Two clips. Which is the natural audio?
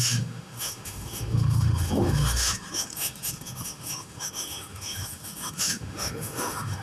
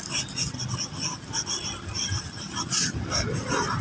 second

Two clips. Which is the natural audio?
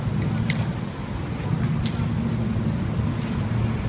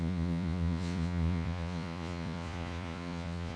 first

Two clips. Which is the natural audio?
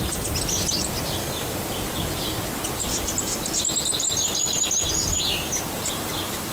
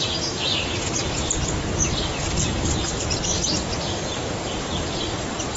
first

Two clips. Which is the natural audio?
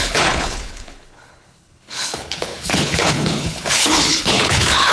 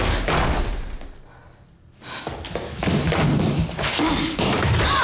second